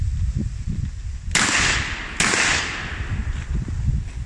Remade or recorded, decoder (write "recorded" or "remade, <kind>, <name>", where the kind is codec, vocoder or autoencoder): recorded